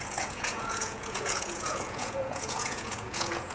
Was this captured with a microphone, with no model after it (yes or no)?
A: no